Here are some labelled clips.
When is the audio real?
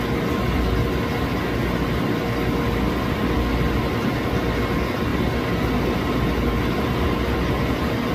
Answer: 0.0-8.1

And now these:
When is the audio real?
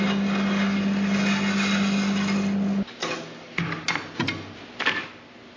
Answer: 0.0-3.0; 3.8-5.6